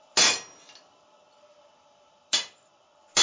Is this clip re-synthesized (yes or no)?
no